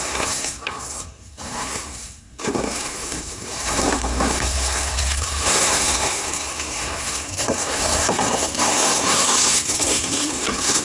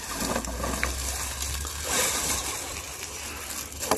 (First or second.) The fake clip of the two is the first